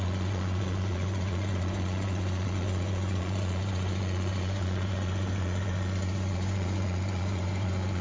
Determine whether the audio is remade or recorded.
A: remade